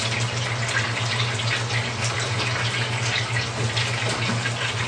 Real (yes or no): yes